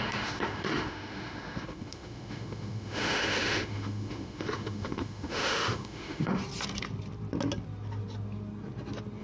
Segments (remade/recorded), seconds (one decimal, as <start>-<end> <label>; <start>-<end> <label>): 0.0-6.4 remade; 6.4-9.2 recorded